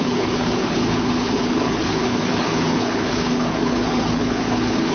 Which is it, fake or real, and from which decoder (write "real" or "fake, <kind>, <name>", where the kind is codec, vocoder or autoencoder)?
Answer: fake, codec, HILCodec